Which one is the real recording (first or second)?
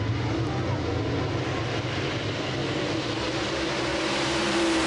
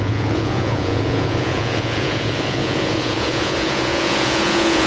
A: first